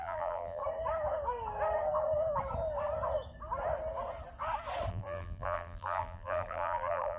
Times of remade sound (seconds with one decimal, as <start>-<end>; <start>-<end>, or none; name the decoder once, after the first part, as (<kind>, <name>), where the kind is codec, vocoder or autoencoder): 0.0-0.6 (vocoder, BigVGAN v2); 4.9-7.2